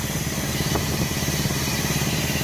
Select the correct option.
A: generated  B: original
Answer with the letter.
A